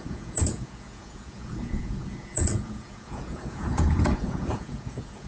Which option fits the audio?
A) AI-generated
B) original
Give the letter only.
A